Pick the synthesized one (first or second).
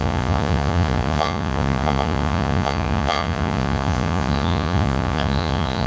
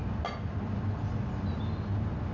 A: first